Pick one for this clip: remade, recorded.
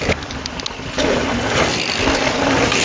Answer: recorded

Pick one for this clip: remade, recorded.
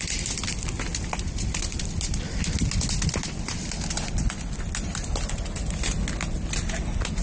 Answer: recorded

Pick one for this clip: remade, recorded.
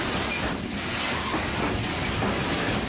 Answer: recorded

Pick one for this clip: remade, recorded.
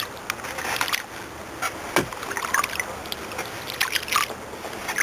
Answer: recorded